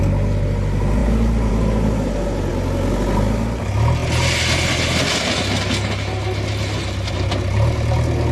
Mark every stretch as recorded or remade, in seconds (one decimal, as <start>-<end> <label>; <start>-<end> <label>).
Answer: 0.0-8.3 recorded